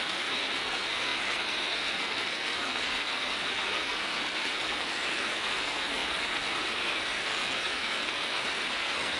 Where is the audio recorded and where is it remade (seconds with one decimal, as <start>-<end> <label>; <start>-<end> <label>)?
0.0-9.2 remade